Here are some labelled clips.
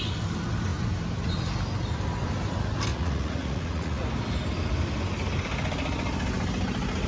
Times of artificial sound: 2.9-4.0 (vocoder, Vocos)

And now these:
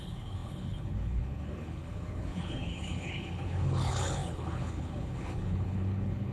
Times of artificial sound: 0.0-6.3 (codec, HILCodec)

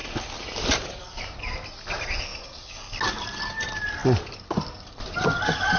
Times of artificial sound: none

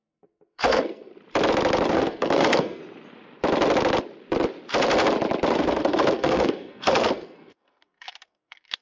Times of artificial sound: 0.0-1.1 (codec, SNAC); 1.9-2.8; 5.5-8.8

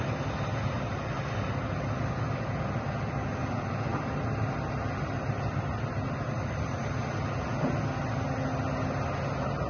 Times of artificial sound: none

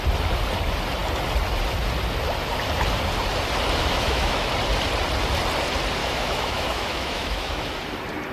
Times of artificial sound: 3.8-4.5 (autoencoder, DAC-VAE); 6.0-7.7

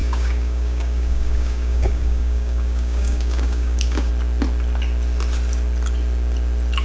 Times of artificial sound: 0.0-4.1 (codec, DAC)